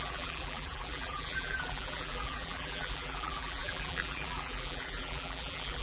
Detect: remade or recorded remade